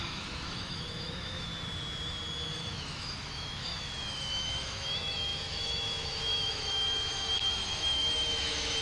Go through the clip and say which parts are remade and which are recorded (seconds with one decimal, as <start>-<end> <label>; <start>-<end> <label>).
0.0-1.5 remade; 1.5-2.5 recorded; 2.5-8.8 remade